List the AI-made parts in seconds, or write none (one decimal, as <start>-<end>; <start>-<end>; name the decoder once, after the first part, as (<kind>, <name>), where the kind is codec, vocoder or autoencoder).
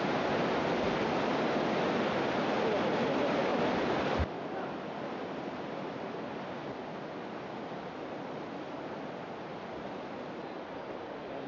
none